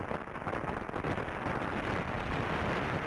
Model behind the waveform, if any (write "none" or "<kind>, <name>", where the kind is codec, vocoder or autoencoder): none